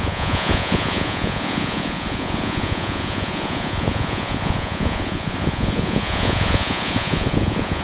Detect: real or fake fake